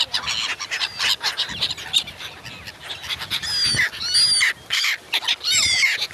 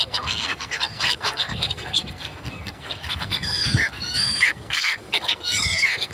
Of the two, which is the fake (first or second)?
second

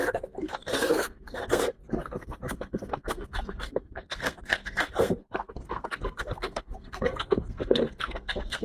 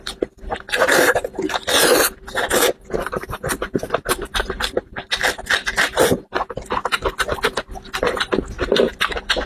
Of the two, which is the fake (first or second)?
first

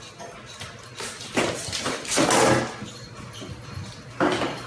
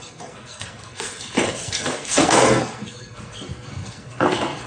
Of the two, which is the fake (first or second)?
second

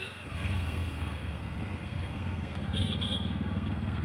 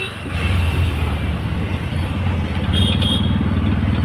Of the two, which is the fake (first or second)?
first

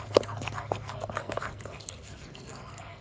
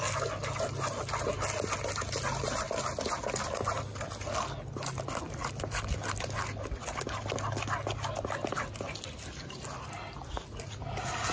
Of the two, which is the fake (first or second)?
first